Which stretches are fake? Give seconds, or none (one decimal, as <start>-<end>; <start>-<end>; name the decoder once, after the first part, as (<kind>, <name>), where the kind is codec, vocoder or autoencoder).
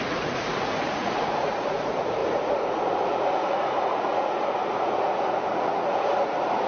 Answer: 0.0-6.7 (vocoder, Vocos)